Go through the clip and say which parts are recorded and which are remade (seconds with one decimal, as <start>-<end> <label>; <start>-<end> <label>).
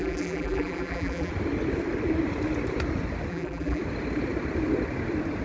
0.0-1.3 remade; 1.3-3.3 recorded; 3.3-3.8 remade; 3.8-5.4 recorded